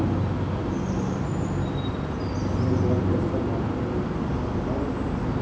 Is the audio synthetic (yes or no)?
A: no